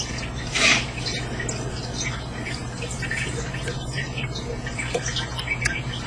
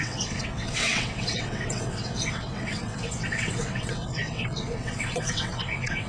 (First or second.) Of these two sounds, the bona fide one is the first